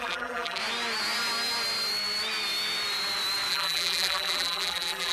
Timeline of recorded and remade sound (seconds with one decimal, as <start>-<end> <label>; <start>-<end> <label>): 0.0-0.6 remade; 0.6-3.5 recorded; 3.5-5.1 remade